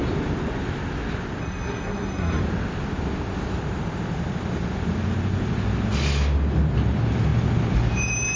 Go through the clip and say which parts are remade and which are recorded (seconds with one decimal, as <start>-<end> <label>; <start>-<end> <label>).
0.0-1.4 recorded; 1.4-2.4 remade; 2.4-8.4 recorded